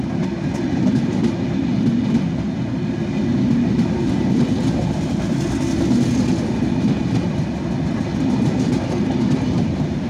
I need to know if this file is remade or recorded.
recorded